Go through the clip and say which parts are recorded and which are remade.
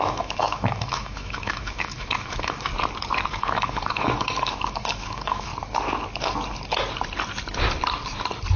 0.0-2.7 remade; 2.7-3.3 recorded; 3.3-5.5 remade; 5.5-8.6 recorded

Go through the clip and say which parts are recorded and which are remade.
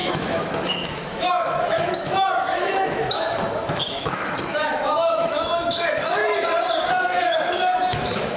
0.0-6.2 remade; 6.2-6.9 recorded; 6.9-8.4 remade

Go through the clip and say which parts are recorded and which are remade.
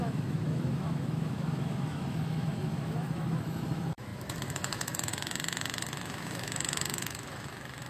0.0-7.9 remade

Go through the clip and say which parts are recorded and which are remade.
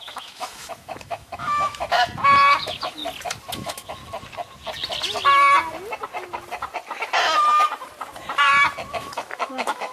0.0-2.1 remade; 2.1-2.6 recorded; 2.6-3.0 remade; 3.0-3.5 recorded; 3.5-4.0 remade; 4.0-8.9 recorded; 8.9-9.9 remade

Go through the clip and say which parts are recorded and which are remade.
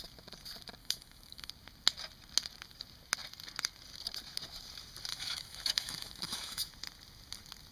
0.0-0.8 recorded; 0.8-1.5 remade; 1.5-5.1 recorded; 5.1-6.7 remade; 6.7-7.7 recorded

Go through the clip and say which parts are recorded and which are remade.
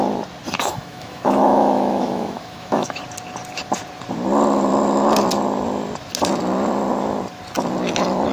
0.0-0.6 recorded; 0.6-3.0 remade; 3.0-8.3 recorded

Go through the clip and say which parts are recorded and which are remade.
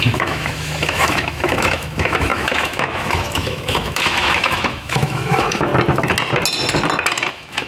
0.0-5.7 remade; 5.7-7.3 recorded; 7.3-7.7 remade